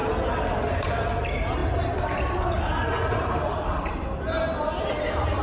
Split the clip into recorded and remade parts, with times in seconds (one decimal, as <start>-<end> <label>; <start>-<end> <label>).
0.0-5.4 recorded